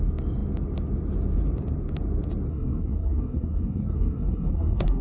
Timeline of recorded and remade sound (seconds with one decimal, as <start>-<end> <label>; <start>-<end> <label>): 0.0-2.5 recorded; 2.5-5.0 remade